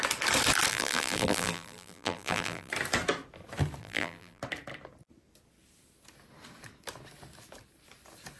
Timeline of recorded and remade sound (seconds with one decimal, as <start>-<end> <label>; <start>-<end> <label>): 0.0-0.7 recorded; 0.7-2.7 remade; 2.7-3.8 recorded; 3.8-4.4 remade; 4.4-8.4 recorded